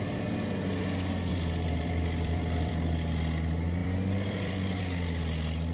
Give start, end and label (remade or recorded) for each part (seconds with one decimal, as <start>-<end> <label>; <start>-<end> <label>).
0.0-1.3 recorded; 1.3-2.7 remade; 2.7-3.8 recorded; 3.8-4.8 remade; 4.8-5.7 recorded